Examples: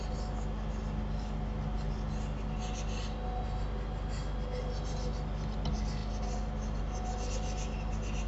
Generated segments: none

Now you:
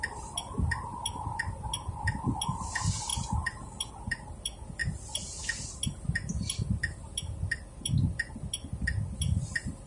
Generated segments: none

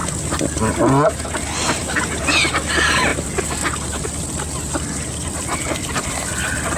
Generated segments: none

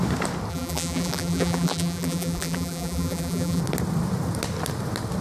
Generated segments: 0.5-3.6 (vocoder, BigVGAN v2)

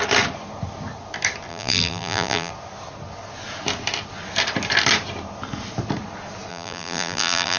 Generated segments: 1.5-2.5 (vocoder, BigVGAN v2); 6.5-7.6

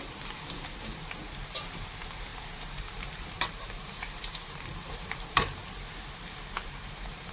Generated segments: 0.0-5.6 (vocoder, BigVGAN v2); 6.7-7.3